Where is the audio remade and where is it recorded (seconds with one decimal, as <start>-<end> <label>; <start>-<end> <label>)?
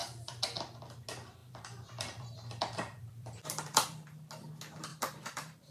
0.0-0.8 remade; 0.8-1.4 recorded; 1.4-4.1 remade; 4.1-4.9 recorded; 4.9-5.7 remade